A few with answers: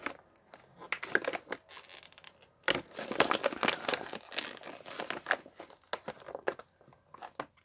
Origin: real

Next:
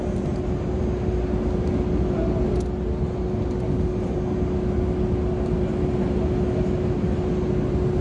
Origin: real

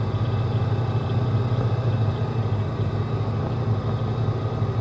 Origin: real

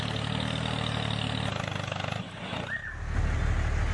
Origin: real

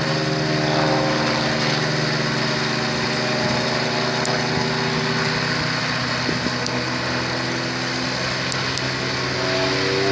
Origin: real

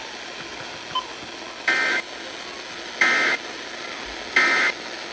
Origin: real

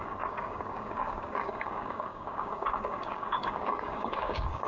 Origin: fake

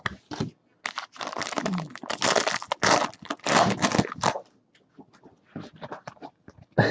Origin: real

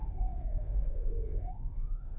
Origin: fake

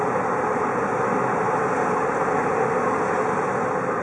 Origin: real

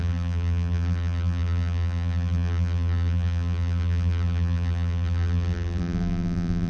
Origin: fake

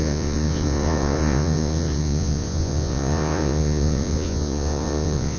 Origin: fake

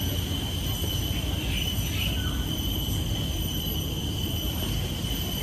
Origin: real